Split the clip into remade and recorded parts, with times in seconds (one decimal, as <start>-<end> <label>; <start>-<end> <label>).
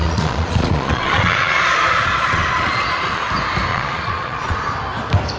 0.0-3.2 remade; 3.2-3.7 recorded; 3.7-4.6 remade; 4.6-5.4 recorded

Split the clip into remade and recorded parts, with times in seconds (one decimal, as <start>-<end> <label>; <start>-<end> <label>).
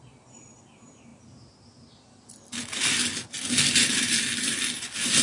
0.0-5.2 recorded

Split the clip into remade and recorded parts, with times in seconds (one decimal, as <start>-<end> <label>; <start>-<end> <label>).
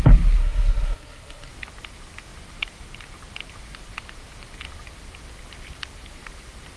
0.0-0.4 recorded; 0.4-1.5 remade; 1.5-6.8 recorded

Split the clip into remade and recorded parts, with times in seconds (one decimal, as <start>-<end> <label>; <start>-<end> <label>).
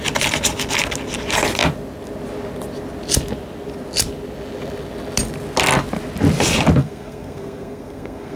0.0-6.8 recorded; 6.8-8.4 remade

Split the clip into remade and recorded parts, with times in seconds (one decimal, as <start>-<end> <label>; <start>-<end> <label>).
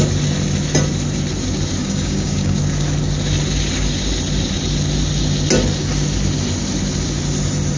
0.0-1.8 recorded; 1.8-2.6 remade; 2.6-7.8 recorded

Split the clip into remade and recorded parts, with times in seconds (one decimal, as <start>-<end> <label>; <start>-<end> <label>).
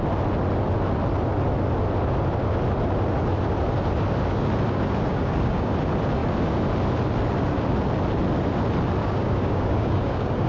0.0-5.1 recorded; 5.1-5.7 remade; 5.7-9.0 recorded; 9.0-10.5 remade